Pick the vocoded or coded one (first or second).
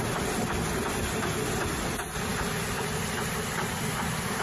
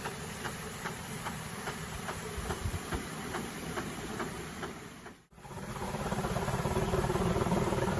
second